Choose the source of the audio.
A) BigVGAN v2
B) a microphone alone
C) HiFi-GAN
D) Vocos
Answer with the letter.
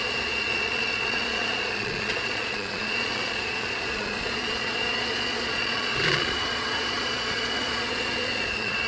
D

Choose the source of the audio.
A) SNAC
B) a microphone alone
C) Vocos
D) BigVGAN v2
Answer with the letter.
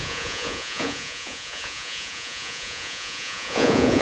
C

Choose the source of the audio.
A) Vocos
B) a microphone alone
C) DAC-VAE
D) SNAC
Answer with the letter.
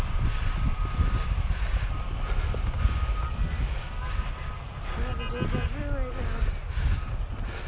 B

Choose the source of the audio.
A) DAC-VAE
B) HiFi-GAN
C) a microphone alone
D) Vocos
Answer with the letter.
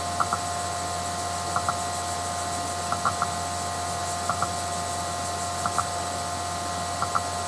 C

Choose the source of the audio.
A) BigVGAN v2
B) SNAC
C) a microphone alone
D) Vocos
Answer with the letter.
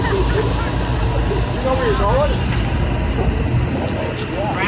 C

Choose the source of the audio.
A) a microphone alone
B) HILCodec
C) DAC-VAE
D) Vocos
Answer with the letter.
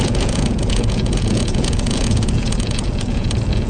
D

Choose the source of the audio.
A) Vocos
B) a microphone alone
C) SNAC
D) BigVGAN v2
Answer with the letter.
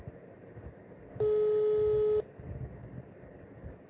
B